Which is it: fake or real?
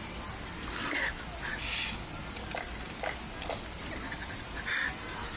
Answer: real